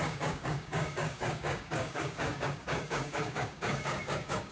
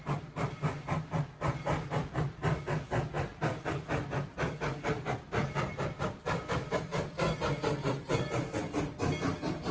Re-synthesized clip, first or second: first